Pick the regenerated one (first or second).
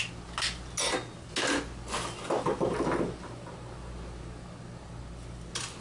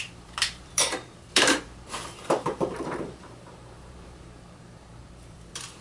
second